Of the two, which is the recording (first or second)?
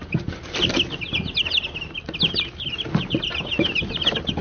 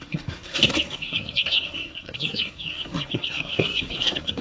first